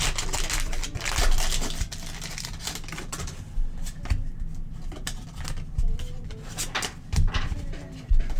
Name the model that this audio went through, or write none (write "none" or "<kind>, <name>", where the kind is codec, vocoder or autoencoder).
none